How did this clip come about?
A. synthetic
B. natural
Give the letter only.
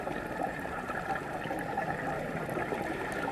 A